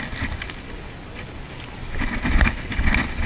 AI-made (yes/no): no